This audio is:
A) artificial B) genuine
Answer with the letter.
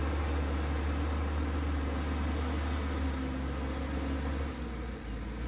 B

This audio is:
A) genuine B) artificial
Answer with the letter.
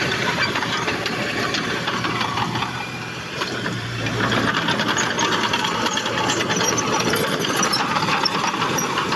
B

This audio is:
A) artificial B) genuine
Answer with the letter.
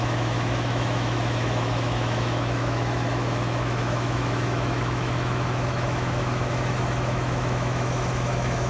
A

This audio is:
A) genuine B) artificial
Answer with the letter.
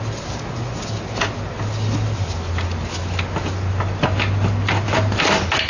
A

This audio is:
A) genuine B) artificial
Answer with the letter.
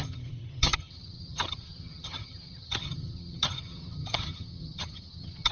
B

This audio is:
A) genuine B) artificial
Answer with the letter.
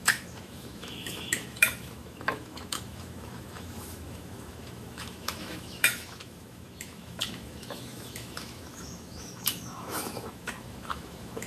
B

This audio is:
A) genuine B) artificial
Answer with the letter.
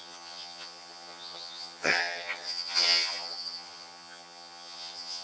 B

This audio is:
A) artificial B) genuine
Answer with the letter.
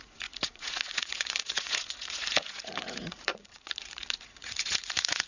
A